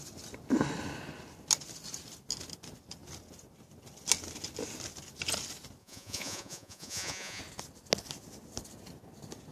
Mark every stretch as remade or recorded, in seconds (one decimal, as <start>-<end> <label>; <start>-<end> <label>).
0.0-5.8 recorded; 5.8-7.4 remade; 7.4-9.5 recorded